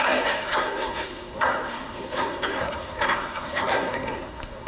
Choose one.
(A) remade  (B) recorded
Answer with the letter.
A